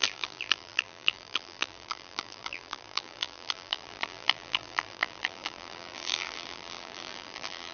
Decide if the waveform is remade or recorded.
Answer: remade